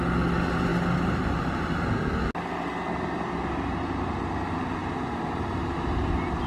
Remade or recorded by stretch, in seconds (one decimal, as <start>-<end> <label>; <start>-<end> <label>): 0.0-6.5 recorded